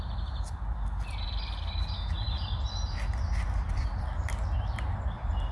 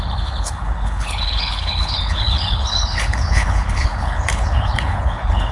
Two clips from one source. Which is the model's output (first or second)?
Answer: second